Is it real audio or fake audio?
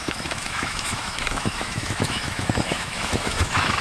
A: fake